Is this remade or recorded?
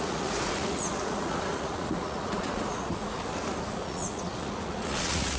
remade